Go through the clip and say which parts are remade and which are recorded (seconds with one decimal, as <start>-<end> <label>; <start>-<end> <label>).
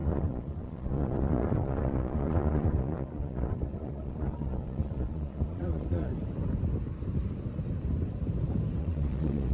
0.0-6.1 remade; 6.1-8.8 recorded; 8.8-9.5 remade